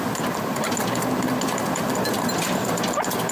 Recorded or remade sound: remade